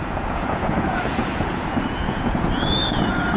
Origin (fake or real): fake